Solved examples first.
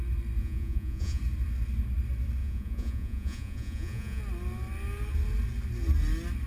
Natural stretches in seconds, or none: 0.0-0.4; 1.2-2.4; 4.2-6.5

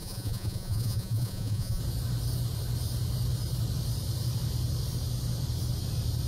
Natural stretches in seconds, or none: 1.8-6.3

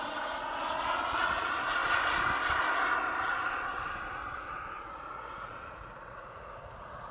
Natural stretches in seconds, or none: 1.8-4.8

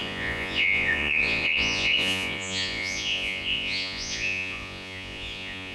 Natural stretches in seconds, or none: none

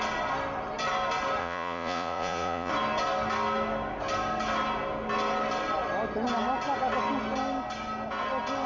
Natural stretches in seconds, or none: 0.0-1.4; 2.7-8.7